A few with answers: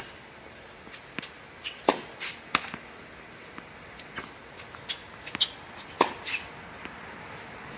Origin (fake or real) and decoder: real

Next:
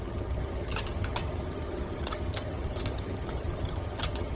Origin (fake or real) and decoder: fake, vocoder, HiFi-GAN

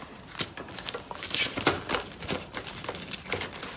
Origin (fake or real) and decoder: real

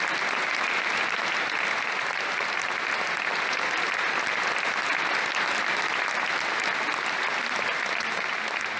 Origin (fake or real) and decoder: real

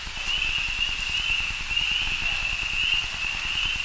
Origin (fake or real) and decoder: real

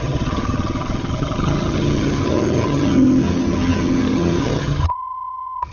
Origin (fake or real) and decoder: fake, vocoder, HiFi-GAN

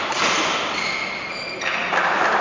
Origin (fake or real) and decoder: real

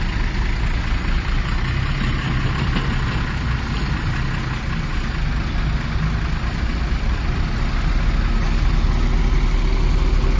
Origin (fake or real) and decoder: real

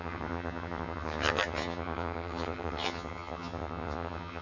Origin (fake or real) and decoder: fake, vocoder, HiFi-GAN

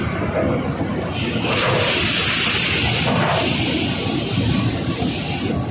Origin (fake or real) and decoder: real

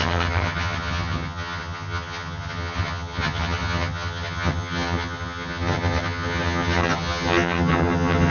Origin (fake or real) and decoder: fake, vocoder, HiFi-GAN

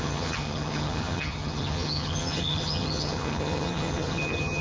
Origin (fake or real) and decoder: fake, vocoder, HiFi-GAN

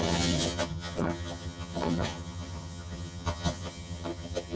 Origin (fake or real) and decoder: fake, vocoder, HiFi-GAN